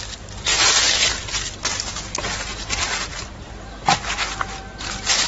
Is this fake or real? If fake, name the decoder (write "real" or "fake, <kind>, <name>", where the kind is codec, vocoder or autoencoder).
real